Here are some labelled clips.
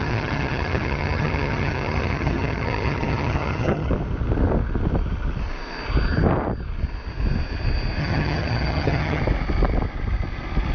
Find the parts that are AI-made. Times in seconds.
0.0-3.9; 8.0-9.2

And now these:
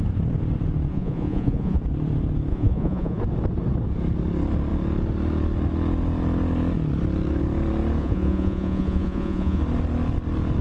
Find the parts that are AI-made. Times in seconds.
0.9-1.8; 2.5-3.2; 8.0-9.6

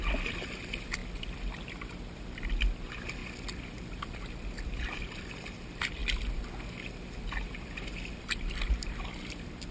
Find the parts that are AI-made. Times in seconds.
0.0-3.2; 3.8-6.0; 7.5-9.7

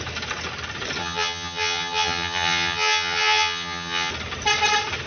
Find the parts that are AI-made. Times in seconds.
1.0-4.1

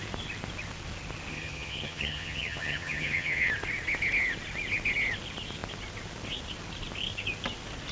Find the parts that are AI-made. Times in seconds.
1.3-3.5

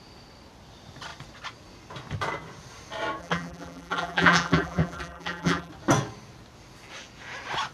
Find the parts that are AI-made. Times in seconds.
3.2-5.7